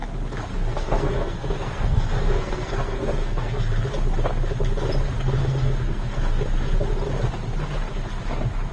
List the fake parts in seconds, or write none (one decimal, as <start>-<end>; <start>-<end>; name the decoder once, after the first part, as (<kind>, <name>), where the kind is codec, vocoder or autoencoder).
0.5-3.6 (codec, SNAC); 5.4-6.4